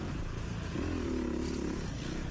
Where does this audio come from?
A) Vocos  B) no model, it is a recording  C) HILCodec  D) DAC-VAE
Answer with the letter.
B